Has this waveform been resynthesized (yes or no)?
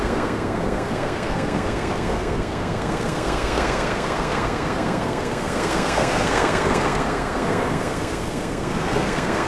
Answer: yes